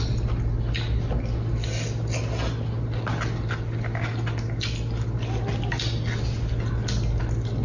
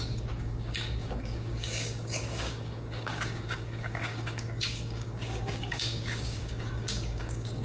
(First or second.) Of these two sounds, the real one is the first